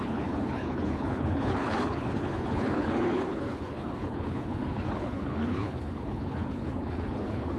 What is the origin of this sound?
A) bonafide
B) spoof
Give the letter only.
B